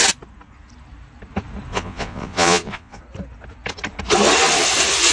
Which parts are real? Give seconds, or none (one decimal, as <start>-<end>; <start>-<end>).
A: 0.0-1.7; 3.0-5.1